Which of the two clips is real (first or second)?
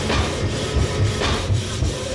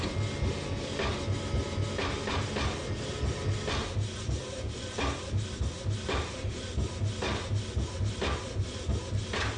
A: second